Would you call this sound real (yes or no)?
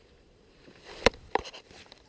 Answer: no